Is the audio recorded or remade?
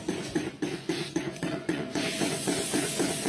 remade